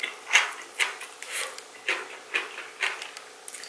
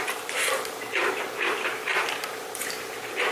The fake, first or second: second